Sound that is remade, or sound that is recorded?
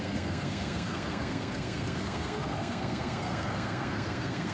remade